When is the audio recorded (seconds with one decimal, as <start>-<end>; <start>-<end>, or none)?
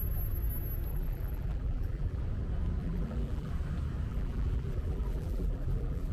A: 0.0-0.9; 2.2-2.8; 3.5-4.1